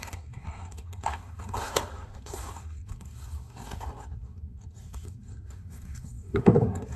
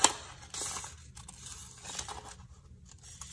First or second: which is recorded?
second